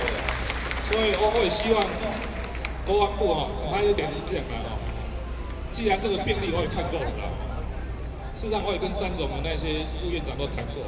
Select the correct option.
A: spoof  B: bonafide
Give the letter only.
B